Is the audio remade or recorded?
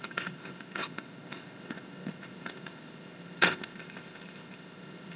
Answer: remade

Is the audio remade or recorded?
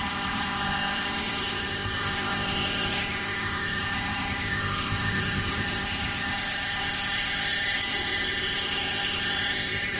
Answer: remade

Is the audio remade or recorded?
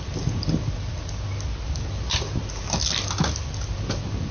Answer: recorded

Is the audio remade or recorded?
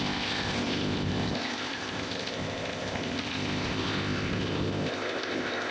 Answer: remade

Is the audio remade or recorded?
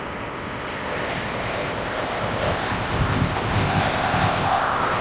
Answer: remade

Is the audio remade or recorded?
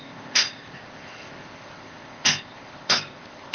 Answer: remade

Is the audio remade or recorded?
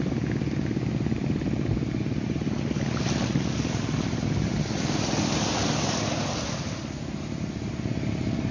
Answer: recorded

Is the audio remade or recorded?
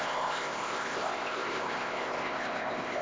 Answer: remade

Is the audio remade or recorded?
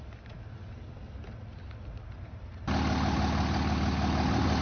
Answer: recorded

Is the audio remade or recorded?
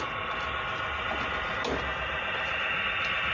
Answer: recorded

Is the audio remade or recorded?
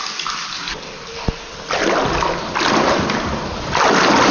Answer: recorded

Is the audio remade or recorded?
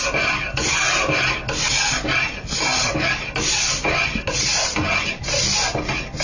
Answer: recorded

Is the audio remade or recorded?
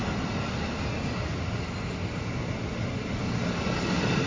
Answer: recorded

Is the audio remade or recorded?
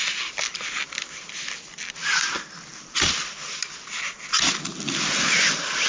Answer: recorded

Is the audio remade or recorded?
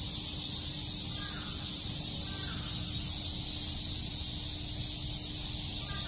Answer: recorded